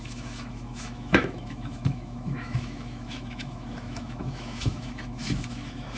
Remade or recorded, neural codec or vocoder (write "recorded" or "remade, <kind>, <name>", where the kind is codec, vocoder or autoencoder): remade, autoencoder, DAC-VAE